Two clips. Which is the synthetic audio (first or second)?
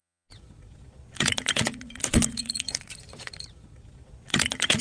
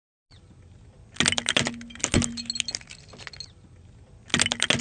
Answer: first